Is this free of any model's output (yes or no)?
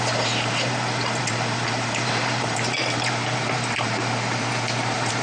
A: no